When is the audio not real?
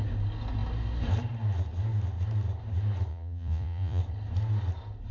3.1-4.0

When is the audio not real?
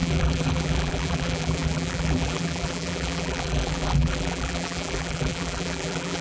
0.0-6.2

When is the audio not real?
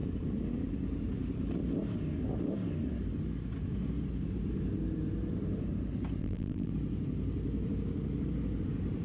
6.2-6.7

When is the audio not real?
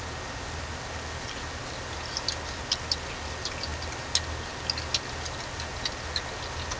none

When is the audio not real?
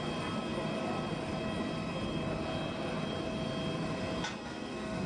4.4-5.1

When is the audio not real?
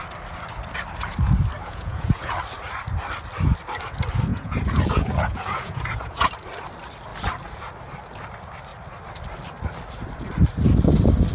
1.6-2.4; 4.3-6.3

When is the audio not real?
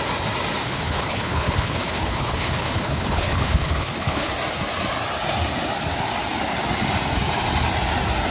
0.6-4.3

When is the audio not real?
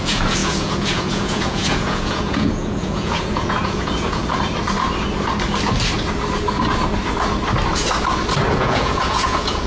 0.0-4.2; 8.5-9.7